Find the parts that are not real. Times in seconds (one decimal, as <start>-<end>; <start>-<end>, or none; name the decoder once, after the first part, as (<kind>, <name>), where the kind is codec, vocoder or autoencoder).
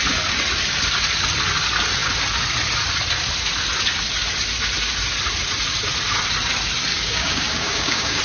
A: 6.9-8.2 (codec, DAC)